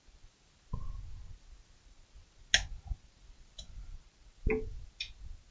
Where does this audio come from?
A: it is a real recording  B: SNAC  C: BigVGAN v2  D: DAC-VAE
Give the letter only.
A